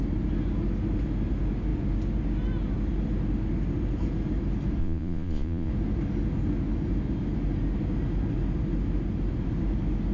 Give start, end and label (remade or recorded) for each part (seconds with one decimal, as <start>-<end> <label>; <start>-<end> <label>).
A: 0.0-4.8 recorded; 4.8-5.7 remade; 5.7-10.1 recorded